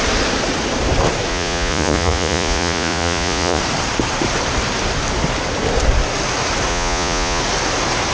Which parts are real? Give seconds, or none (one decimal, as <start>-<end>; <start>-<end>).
0.0-1.3; 3.6-6.7; 7.4-8.1